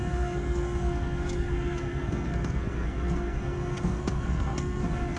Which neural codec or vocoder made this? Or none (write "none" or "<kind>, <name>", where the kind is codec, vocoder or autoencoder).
codec, SNAC